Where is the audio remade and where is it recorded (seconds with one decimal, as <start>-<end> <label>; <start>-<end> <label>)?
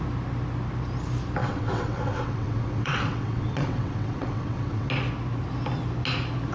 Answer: 0.0-1.4 recorded; 1.4-4.9 remade; 4.9-6.5 recorded